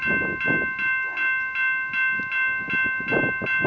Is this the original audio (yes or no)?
yes